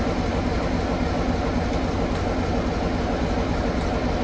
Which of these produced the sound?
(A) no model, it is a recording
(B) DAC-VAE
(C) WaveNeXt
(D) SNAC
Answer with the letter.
A